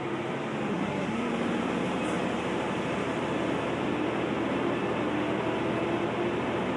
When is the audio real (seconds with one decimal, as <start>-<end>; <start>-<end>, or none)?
0.0-0.7; 1.3-6.8